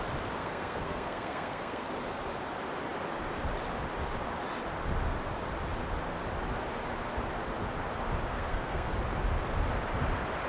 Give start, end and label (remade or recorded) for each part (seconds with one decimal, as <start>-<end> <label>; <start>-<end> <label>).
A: 0.0-0.4 recorded; 0.4-1.9 remade; 1.9-8.3 recorded; 8.3-8.9 remade; 8.9-10.5 recorded